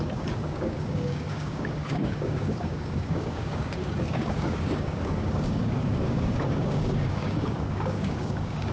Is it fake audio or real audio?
fake